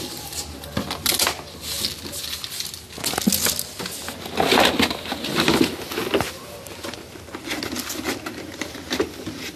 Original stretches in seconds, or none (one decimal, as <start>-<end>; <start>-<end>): 0.0-9.6